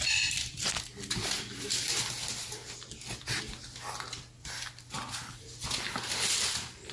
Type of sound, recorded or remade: recorded